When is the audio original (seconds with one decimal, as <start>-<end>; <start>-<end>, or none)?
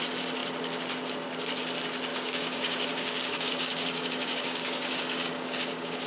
0.0-2.1